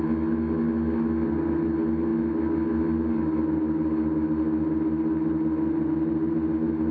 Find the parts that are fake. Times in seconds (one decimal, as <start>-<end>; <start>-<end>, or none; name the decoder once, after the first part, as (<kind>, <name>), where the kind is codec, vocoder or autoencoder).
none